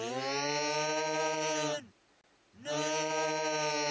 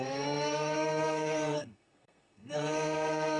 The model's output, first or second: second